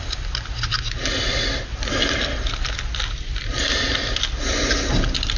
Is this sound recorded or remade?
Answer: recorded